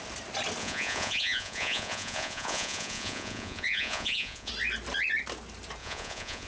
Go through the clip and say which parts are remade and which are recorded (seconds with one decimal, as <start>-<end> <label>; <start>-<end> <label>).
0.0-0.6 recorded; 0.6-4.5 remade; 4.5-5.8 recorded; 5.8-6.5 remade